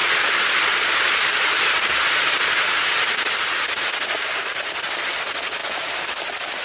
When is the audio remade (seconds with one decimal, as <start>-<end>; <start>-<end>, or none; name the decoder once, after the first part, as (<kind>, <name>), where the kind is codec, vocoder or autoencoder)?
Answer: none